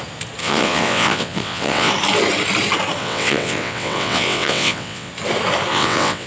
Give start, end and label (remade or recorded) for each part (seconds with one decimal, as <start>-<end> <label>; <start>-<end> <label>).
0.0-0.4 recorded; 0.4-1.9 remade; 1.9-3.0 recorded; 3.0-5.1 remade; 5.1-5.7 recorded; 5.7-6.3 remade